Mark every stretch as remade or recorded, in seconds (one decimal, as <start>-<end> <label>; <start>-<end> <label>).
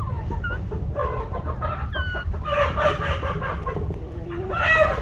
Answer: 0.0-5.0 recorded